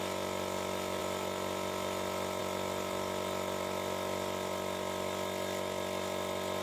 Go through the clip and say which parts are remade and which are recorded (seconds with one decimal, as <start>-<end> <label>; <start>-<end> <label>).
0.0-6.6 recorded